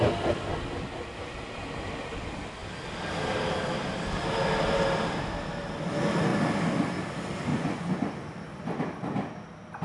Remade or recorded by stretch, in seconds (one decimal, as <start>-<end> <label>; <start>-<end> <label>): 0.0-7.5 recorded; 7.5-8.1 remade; 8.1-9.8 recorded